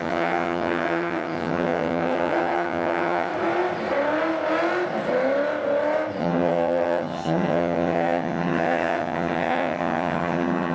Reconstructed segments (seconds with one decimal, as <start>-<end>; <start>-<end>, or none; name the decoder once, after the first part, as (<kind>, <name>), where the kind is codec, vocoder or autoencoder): 0.0-3.3 (vocoder, HiFi-GAN); 6.2-10.7